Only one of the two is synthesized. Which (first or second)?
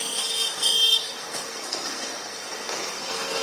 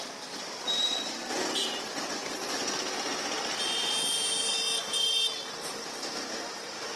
first